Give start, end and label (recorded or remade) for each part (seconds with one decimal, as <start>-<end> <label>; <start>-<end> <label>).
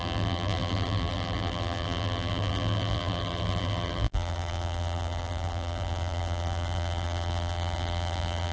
0.0-8.5 remade